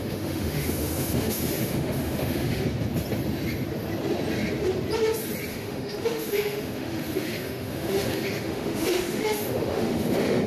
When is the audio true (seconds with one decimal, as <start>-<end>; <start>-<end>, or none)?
2.6-5.5

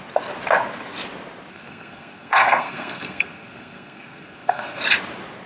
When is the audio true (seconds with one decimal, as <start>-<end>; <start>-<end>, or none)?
0.0-1.5; 4.8-5.5

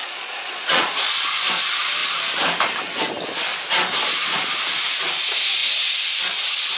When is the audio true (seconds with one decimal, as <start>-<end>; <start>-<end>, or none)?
1.1-6.8

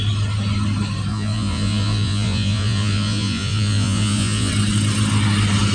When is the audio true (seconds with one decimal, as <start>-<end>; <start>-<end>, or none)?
0.0-1.1; 4.5-5.7

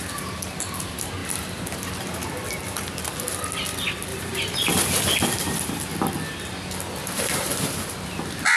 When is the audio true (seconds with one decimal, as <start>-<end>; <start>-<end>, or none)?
0.0-1.2; 2.4-4.1; 4.7-7.0; 7.5-8.6